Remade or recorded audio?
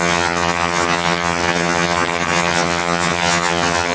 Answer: remade